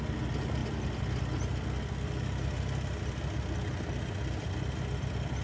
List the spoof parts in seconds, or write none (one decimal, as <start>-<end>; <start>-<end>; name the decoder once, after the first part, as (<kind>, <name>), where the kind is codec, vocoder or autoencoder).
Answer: none